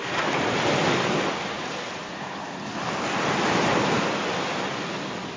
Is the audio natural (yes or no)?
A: yes